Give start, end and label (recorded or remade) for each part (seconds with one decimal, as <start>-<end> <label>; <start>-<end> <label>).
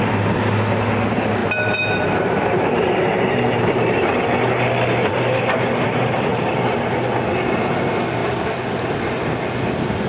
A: 0.0-1.4 recorded; 1.4-4.2 remade; 4.2-6.3 recorded; 6.3-6.9 remade; 6.9-10.1 recorded